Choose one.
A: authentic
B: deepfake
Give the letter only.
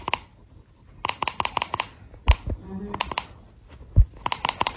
A